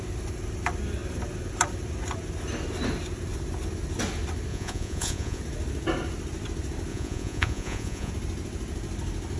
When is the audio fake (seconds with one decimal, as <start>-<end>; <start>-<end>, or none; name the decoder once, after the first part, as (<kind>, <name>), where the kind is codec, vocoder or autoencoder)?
4.5-5.4 (vocoder, Vocos); 6.9-8.1